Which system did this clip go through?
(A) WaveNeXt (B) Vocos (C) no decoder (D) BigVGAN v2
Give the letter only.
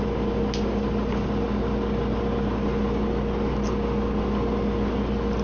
C